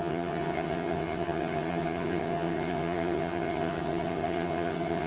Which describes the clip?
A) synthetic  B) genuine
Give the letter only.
A